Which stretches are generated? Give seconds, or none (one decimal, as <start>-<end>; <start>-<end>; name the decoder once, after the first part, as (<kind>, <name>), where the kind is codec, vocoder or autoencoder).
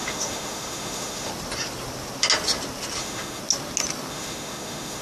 0.0-1.3 (autoencoder, DAC-VAE); 3.0-3.4; 4.1-5.0